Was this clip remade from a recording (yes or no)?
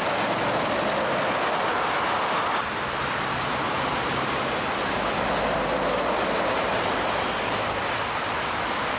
yes